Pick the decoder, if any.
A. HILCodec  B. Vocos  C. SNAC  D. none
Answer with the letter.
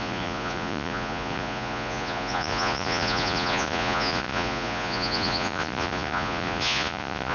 B